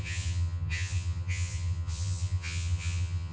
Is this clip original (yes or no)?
no